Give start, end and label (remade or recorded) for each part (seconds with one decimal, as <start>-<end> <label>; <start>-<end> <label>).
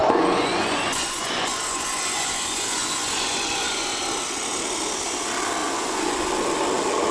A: 0.0-4.0 remade; 4.0-5.6 recorded; 5.6-6.3 remade; 6.3-7.1 recorded